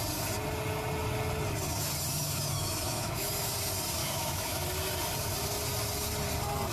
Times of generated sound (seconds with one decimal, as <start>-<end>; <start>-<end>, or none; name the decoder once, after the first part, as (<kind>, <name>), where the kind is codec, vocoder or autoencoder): 2.2-3.3 (autoencoder, DAC-VAE); 4.0-4.7